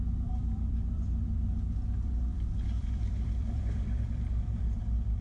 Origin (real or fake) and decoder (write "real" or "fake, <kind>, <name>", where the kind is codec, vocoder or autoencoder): fake, vocoder, BigVGAN v2